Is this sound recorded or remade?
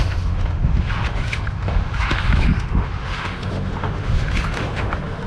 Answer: remade